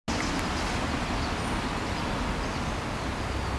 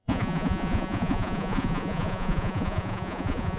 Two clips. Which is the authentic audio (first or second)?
first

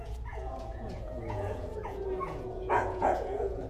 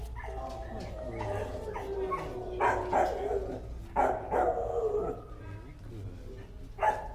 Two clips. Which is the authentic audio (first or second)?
second